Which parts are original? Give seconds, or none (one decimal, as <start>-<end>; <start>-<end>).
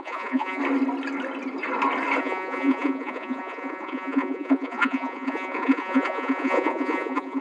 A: 0.6-2.2